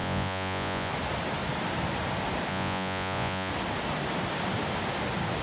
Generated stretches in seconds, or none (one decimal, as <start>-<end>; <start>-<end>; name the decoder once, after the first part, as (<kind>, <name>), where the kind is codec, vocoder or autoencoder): 0.0-0.9 (vocoder, Vocos); 2.5-3.5